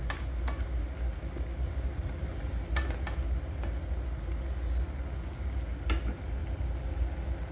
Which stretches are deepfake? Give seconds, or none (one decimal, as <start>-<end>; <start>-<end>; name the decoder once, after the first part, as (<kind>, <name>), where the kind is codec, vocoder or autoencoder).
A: none